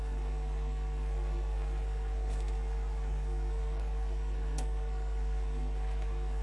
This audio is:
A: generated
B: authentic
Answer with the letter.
A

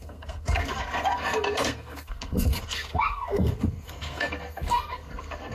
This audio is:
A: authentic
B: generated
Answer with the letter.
B